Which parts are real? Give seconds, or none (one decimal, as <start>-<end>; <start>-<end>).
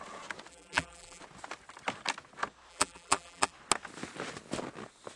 0.0-0.5; 1.2-2.7; 3.5-5.2